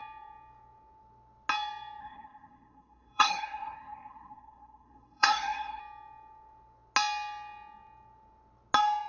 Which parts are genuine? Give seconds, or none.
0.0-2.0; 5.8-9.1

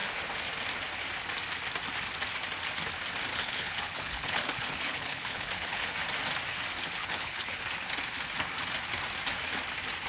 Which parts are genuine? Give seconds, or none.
0.0-3.3; 5.9-7.0; 7.6-10.1

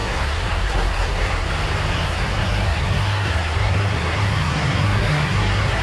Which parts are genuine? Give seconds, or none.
1.5-1.9